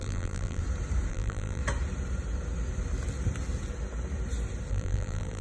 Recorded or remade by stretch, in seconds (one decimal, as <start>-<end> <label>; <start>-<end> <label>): 0.0-0.6 remade; 0.6-1.1 recorded; 1.1-1.6 remade; 1.6-4.7 recorded; 4.7-5.4 remade